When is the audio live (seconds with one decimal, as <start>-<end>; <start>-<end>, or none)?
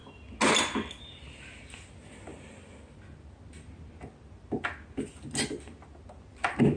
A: 0.0-6.8